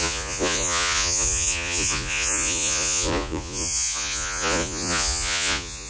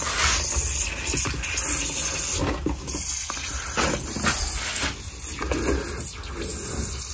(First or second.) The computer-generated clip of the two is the first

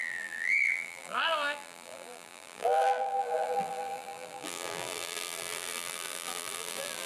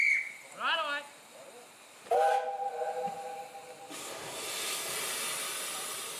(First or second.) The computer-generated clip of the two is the first